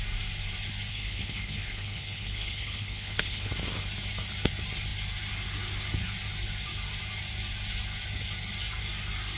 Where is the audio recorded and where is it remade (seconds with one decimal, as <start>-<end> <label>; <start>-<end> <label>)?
0.0-0.9 recorded; 0.9-3.5 remade; 3.5-9.4 recorded